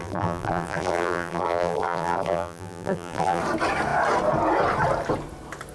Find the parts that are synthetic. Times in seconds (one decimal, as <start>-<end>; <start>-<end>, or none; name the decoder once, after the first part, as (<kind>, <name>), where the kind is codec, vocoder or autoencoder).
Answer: 0.0-3.4 (vocoder, BigVGAN v2)